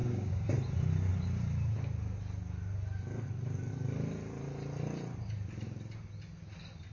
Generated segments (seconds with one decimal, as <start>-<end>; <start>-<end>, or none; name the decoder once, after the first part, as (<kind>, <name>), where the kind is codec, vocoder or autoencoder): 0.0-0.5 (codec, DAC)